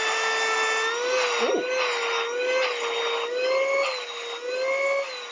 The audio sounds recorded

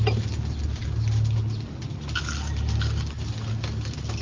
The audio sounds recorded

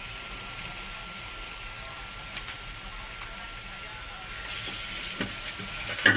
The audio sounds recorded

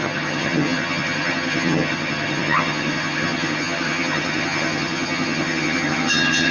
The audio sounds remade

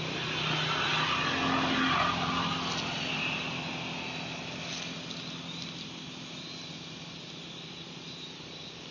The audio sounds recorded